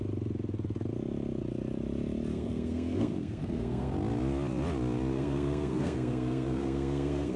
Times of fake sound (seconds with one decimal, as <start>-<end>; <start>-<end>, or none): 2.3-3.9; 5.1-7.4